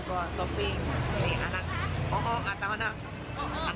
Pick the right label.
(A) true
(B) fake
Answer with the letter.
A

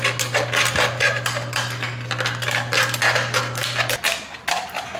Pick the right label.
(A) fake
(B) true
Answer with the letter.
B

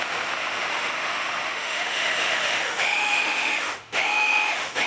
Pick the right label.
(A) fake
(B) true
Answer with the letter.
A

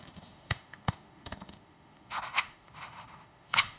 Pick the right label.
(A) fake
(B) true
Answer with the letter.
A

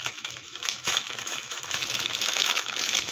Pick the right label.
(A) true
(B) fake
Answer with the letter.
B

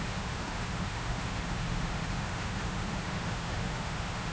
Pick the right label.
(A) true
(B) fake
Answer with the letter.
B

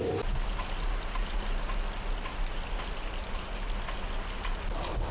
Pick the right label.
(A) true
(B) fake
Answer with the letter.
A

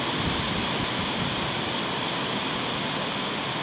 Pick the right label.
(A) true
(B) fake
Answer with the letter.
A